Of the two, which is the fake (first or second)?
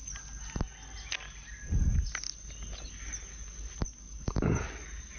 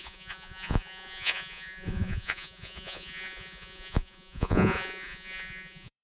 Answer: second